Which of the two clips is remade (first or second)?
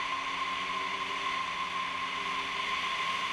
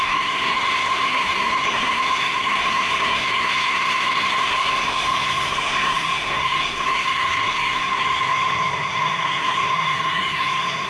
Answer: second